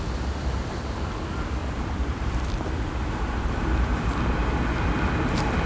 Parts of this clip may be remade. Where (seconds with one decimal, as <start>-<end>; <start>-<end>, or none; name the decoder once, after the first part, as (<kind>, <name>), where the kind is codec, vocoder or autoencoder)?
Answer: 1.6-4.8 (vocoder, BigVGAN v2)